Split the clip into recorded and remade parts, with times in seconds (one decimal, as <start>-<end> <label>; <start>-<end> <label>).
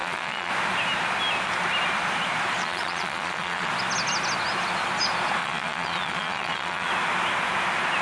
0.0-0.5 remade; 0.5-2.6 recorded; 2.6-3.7 remade; 3.7-5.4 recorded; 5.4-6.9 remade; 6.9-8.0 recorded